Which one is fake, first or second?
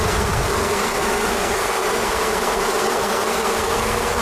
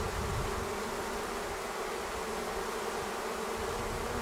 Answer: first